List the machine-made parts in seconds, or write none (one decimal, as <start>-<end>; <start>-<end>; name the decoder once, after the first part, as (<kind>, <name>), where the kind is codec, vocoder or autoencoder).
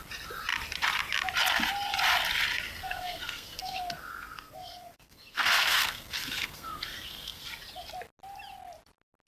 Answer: 2.8-7.5 (codec, SNAC)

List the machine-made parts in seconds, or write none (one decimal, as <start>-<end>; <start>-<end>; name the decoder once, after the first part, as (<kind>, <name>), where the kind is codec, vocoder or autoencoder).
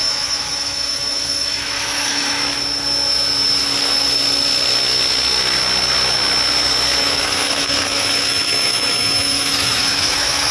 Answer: 0.0-2.4 (autoencoder, DAC-VAE); 7.0-10.5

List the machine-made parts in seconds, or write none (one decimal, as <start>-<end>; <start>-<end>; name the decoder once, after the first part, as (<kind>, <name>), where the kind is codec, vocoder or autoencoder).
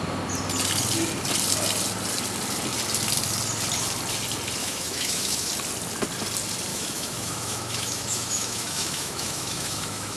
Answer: 4.6-5.5 (autoencoder, DAC-VAE); 6.7-10.2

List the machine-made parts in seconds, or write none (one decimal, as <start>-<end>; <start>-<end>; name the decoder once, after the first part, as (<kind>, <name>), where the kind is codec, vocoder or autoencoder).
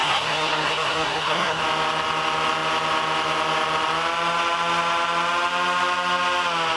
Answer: 0.0-1.6 (codec, SNAC)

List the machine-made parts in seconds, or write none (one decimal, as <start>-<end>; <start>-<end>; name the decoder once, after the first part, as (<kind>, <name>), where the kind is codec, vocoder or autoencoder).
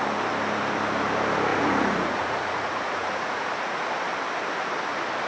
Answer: 1.5-3.9 (vocoder, Vocos)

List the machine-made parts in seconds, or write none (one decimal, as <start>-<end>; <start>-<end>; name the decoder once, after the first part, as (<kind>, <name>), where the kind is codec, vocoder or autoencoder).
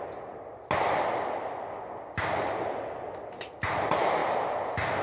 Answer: none